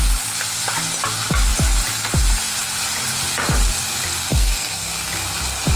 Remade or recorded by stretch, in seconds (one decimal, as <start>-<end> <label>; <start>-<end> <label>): 0.0-4.3 recorded; 4.3-4.9 remade; 4.9-5.8 recorded